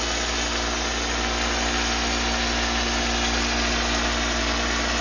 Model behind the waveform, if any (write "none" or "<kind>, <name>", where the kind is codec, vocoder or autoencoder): none